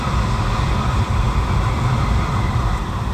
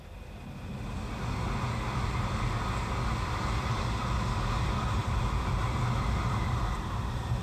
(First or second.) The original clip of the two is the second